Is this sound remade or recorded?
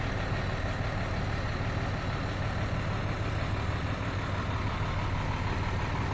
recorded